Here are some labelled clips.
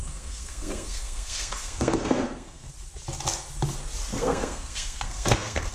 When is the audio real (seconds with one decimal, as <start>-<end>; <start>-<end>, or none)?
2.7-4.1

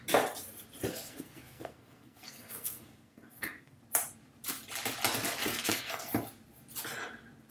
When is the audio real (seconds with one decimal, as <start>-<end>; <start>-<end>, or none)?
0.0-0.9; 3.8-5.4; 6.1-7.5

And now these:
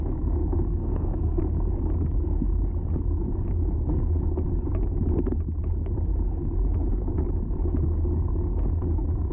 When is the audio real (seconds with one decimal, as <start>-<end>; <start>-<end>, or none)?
0.0-0.8; 1.4-9.3

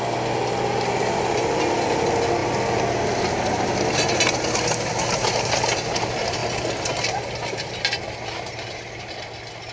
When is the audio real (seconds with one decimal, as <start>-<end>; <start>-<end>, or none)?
0.0-9.7

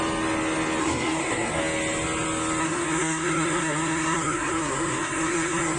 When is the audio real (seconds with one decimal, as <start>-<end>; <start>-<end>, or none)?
0.0-0.8; 1.6-2.6